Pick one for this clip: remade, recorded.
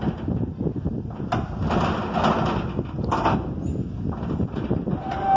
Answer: recorded